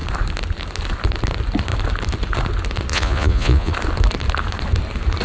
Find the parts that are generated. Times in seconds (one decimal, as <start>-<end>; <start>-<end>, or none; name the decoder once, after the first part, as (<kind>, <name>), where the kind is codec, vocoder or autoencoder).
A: 2.9-3.7 (vocoder, Vocos)

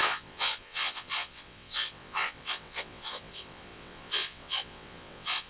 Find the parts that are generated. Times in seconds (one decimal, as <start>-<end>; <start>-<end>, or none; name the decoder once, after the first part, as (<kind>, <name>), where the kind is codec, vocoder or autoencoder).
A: 0.0-5.5 (vocoder, WaveNeXt)

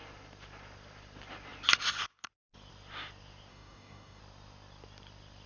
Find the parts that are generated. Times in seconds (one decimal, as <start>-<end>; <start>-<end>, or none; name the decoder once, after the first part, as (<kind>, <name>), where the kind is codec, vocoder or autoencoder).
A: 3.5-4.2 (codec, DAC)

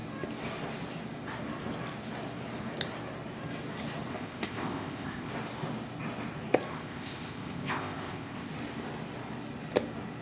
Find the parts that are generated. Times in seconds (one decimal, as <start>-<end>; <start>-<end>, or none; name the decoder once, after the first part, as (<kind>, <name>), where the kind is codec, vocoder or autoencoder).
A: 4.1-5.3 (codec, ZipCodec); 6.7-8.5